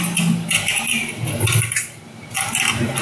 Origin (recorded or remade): recorded